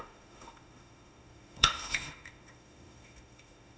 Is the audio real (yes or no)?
no